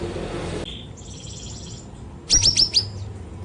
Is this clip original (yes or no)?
yes